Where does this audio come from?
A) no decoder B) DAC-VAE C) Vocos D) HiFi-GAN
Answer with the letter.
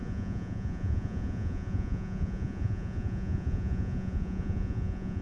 C